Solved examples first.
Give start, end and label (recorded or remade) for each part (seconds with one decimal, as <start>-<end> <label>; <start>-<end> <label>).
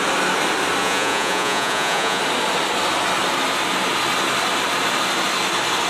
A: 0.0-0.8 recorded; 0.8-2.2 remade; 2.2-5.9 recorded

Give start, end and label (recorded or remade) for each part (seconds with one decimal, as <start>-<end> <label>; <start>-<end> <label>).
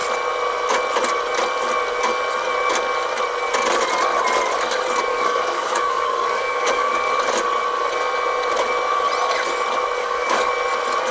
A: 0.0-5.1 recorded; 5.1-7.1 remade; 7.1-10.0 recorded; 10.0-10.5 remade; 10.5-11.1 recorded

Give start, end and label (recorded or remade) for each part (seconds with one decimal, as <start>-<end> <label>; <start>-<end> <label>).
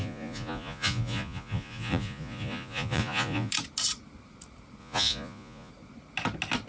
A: 0.0-3.5 remade; 3.5-4.8 recorded; 4.8-5.7 remade; 5.7-6.7 recorded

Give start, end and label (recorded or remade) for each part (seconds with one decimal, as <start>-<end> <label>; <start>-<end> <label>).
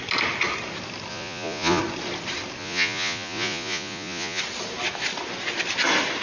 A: 0.0-1.1 recorded; 1.1-1.8 remade; 1.8-2.6 recorded; 2.6-4.4 remade; 4.4-6.2 recorded